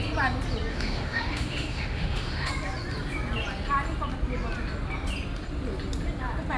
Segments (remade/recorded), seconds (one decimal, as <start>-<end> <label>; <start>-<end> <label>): 0.0-0.7 recorded; 0.7-2.5 remade; 2.5-6.6 recorded